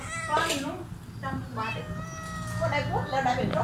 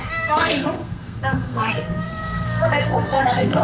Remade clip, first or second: second